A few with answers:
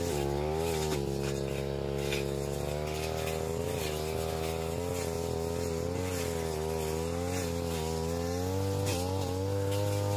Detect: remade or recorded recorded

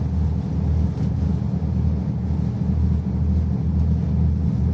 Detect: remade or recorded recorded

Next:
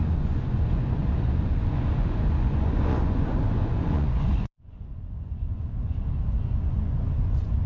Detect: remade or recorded remade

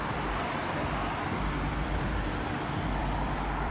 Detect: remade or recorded remade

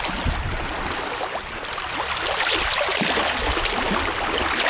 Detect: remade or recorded recorded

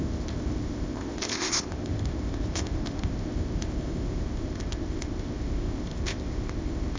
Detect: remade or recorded remade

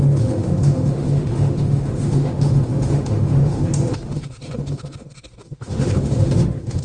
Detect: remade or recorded remade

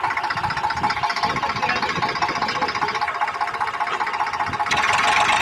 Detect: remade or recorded recorded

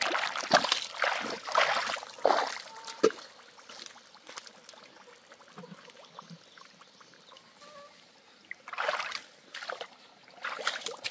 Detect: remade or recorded recorded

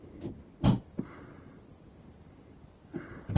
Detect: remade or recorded recorded